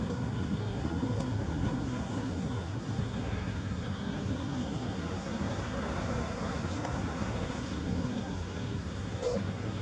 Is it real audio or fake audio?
fake